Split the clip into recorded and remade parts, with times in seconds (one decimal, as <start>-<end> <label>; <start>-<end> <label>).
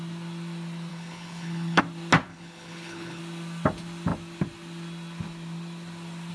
0.0-0.9 recorded; 0.9-1.8 remade; 1.8-2.3 recorded; 2.3-3.2 remade; 3.2-6.3 recorded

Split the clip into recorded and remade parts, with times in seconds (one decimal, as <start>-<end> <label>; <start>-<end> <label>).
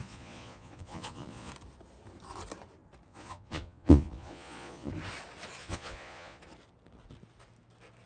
0.0-1.5 remade; 1.5-3.1 recorded; 3.1-4.9 remade; 4.9-5.6 recorded; 5.6-6.4 remade; 6.4-8.1 recorded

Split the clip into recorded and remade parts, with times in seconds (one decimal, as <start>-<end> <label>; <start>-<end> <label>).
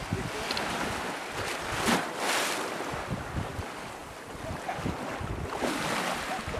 0.0-6.6 recorded